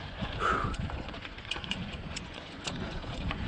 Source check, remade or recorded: remade